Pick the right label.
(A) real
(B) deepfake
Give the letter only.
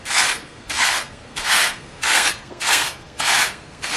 B